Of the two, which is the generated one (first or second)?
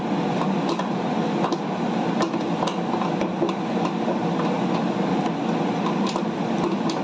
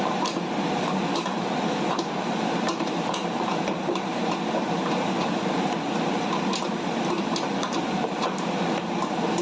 second